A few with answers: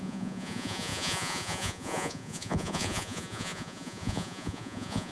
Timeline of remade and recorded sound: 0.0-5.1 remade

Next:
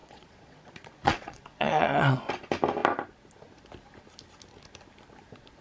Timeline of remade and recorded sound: 0.0-2.3 remade; 2.3-5.6 recorded

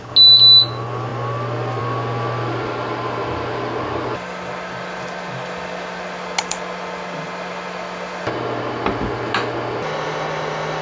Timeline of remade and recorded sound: 0.0-10.8 recorded

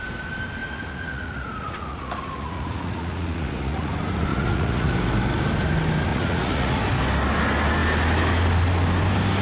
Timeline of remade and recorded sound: 0.0-0.6 recorded; 0.6-3.9 remade; 3.9-4.3 recorded; 4.3-4.9 remade; 4.9-6.1 recorded; 6.1-6.8 remade; 6.8-9.4 recorded

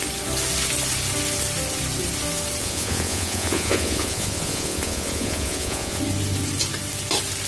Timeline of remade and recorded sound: 0.0-2.6 recorded; 2.6-6.0 remade; 6.0-7.5 recorded

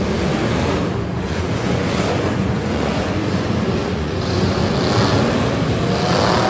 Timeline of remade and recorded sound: 0.0-1.1 recorded; 1.1-4.6 remade; 4.6-6.5 recorded

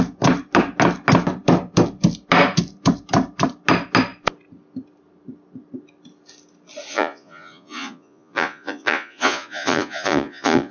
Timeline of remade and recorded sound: 0.0-6.9 recorded; 6.9-10.7 remade